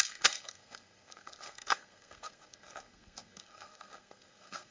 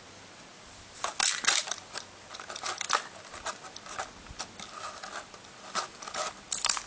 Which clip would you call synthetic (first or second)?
first